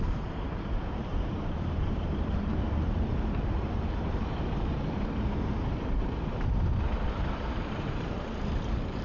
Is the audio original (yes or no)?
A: no